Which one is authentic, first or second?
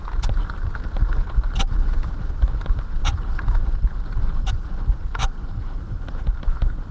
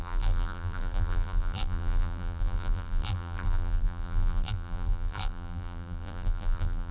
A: first